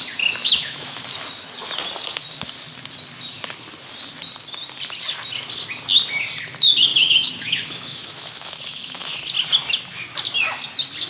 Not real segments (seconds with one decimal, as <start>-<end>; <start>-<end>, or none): 0.4-1.0; 6.9-9.2